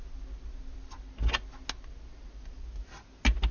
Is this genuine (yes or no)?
yes